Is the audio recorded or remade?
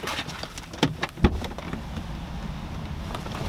recorded